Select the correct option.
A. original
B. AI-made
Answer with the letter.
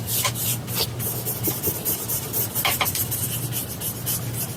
A